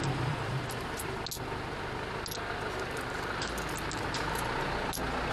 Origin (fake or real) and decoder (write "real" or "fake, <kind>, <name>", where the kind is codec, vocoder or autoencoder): real